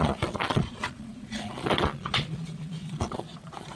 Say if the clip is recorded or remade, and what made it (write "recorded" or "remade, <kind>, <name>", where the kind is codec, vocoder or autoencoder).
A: remade, vocoder, Vocos